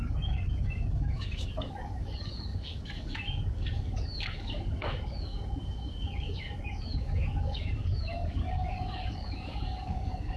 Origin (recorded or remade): remade